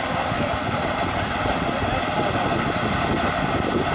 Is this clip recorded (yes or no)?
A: yes